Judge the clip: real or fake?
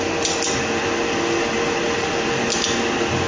real